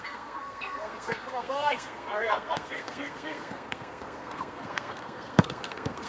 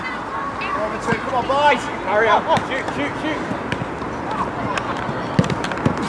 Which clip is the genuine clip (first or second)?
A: second